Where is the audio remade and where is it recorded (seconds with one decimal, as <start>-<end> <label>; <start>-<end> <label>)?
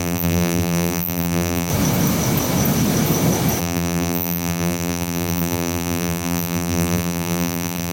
0.0-1.7 remade; 1.7-3.6 recorded; 3.6-7.9 remade